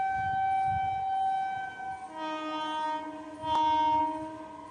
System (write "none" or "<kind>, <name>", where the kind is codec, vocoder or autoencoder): none